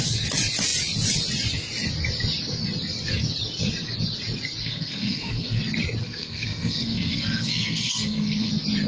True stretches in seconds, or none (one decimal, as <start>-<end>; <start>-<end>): 0.0-4.6; 5.6-6.0; 8.5-8.9

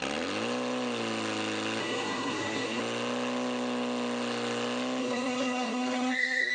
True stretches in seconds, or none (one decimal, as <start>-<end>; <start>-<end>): 0.0-1.8; 2.8-5.0

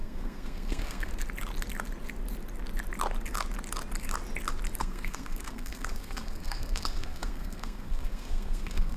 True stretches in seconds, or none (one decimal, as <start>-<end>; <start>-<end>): 1.1-4.8

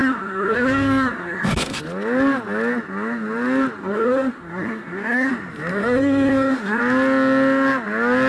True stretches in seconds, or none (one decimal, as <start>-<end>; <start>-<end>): 1.8-3.8; 5.3-5.7; 6.8-8.3